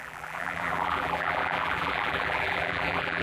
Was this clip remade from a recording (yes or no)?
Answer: yes